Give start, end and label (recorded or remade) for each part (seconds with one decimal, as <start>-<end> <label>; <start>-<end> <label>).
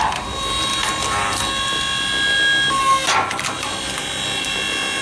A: 0.0-5.0 recorded